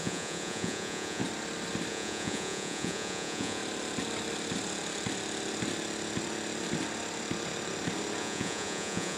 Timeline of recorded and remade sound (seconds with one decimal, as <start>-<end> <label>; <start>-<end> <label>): 0.0-1.2 remade; 1.2-1.9 recorded; 1.9-3.6 remade; 3.6-8.2 recorded; 8.2-9.2 remade